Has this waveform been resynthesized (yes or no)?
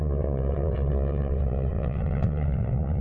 yes